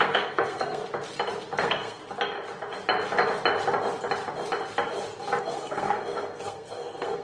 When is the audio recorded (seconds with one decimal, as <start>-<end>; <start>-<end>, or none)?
0.8-1.6; 2.0-5.4